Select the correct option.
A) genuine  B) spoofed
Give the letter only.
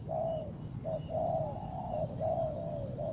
A